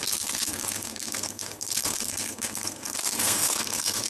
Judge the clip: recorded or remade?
remade